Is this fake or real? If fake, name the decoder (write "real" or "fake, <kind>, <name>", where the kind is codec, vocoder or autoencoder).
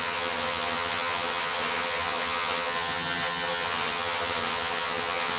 fake, vocoder, HiFi-GAN